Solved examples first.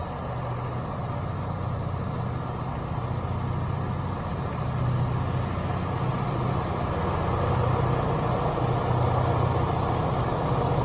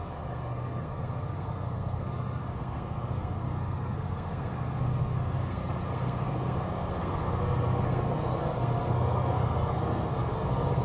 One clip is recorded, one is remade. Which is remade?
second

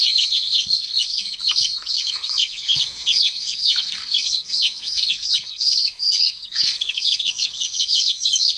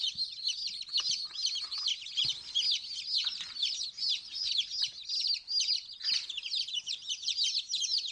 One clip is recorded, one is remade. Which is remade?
first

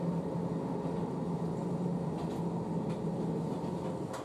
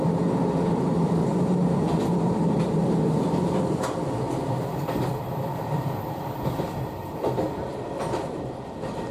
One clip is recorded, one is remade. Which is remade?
second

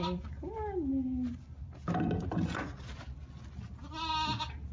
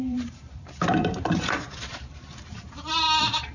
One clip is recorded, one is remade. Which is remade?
second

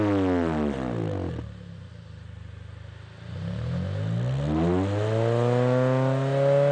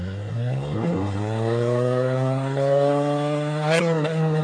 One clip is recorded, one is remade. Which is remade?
second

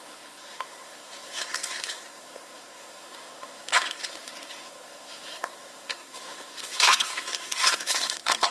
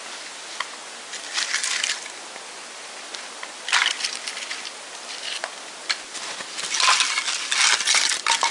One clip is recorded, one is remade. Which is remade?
first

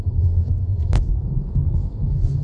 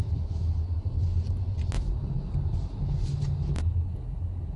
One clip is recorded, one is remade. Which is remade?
first